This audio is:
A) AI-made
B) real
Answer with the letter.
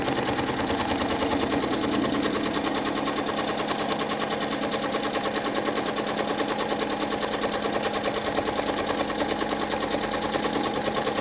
B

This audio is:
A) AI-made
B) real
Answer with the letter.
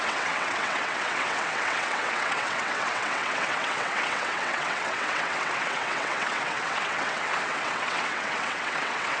A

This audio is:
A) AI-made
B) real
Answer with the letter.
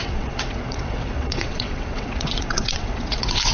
A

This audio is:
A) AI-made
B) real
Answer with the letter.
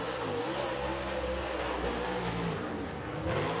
B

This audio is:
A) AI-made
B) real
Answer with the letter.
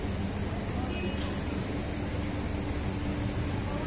B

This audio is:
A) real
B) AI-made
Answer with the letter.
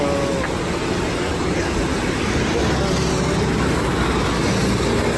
A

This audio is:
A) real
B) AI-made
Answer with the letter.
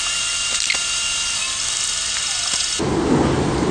A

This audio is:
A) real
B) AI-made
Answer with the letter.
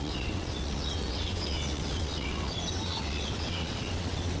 B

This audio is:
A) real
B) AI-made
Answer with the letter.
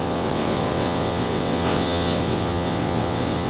B